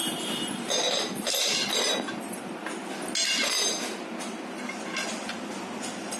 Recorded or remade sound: recorded